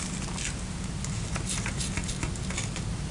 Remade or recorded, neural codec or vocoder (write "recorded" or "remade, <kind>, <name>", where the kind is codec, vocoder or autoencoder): recorded